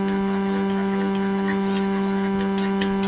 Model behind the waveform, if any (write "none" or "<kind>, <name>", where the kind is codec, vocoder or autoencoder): none